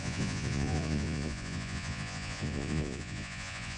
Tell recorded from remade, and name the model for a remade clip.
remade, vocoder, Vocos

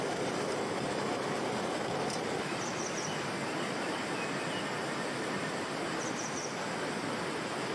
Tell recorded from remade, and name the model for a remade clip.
recorded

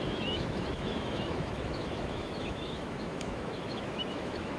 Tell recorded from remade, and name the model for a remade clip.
remade, autoencoder, DAC-VAE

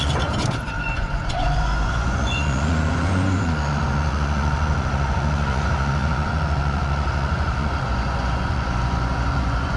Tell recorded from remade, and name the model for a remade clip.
remade, vocoder, Vocos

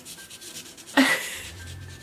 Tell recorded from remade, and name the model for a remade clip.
remade, vocoder, BigVGAN v2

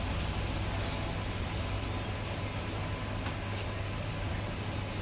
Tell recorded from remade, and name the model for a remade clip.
recorded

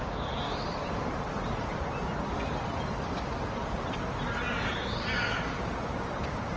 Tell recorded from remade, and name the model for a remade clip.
recorded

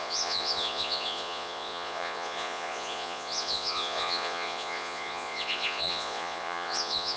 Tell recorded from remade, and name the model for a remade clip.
remade, vocoder, Vocos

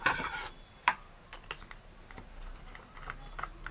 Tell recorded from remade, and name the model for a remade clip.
remade, vocoder, BigVGAN v2